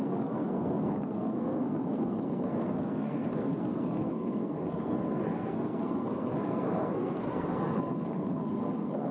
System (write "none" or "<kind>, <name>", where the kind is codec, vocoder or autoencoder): codec, SNAC